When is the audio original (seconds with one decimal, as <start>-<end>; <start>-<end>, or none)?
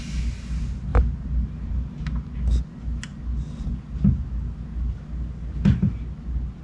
0.0-0.9; 2.0-6.6